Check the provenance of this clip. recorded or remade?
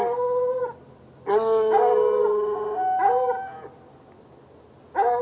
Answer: recorded